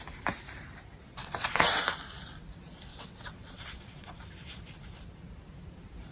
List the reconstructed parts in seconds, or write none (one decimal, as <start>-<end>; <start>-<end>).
1.2-1.8; 2.9-4.2

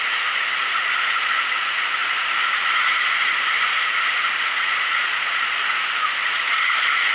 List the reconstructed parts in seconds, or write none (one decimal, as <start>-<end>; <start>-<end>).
0.0-7.1

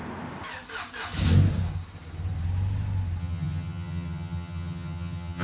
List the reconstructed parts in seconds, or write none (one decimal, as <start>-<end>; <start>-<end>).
3.2-5.4

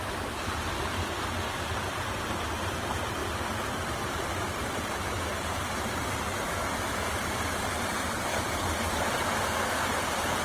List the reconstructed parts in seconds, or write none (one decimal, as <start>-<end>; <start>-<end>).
none

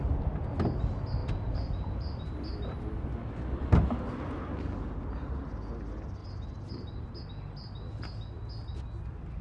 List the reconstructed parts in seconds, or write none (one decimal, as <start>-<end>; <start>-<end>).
1.2-2.3; 6.2-7.2

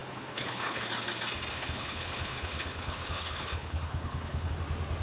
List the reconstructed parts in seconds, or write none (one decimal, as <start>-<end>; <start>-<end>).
0.0-0.9; 1.5-4.5

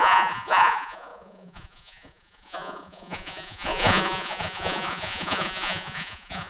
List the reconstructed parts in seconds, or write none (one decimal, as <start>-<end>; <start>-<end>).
0.0-6.5

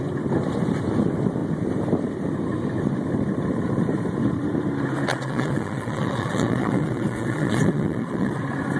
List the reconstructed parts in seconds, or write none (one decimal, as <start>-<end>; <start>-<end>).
5.1-8.4